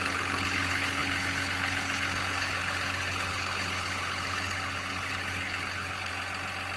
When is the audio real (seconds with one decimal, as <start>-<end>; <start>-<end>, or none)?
6.1-6.8